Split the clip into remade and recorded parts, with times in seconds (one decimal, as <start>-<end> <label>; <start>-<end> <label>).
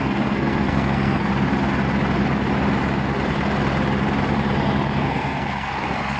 0.0-1.3 remade; 1.3-5.0 recorded; 5.0-6.2 remade